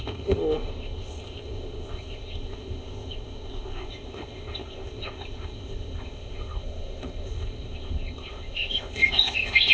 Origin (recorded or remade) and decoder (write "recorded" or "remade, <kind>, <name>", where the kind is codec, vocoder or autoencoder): remade, codec, ZipCodec